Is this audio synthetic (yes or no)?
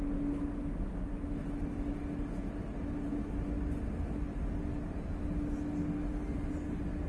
no